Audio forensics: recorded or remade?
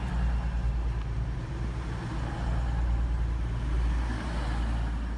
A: recorded